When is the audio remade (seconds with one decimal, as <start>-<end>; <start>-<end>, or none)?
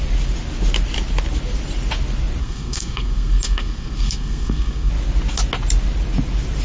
2.4-4.9